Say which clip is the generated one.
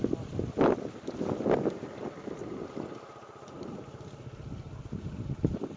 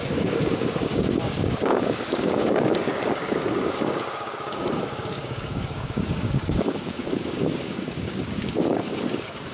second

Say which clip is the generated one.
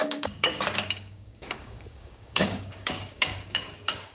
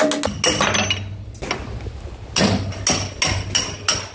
first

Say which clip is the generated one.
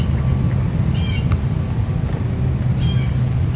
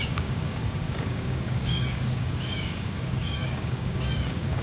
second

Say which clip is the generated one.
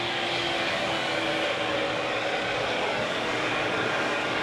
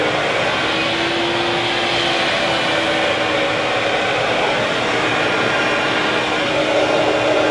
first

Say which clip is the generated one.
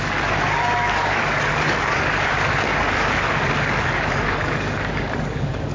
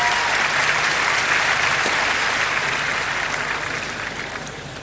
first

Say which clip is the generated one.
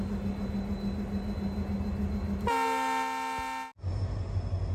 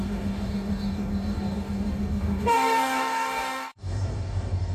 second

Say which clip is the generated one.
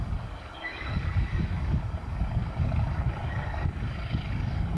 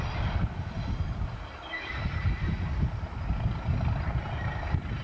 first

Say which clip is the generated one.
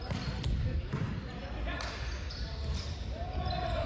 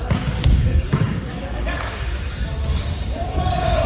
second